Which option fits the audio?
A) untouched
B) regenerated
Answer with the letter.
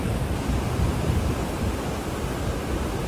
B